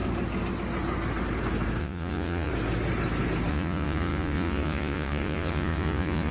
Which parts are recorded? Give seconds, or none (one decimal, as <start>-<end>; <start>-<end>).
0.0-1.8; 2.5-3.5